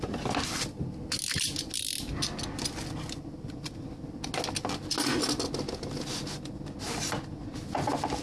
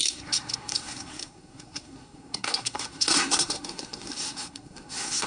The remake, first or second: second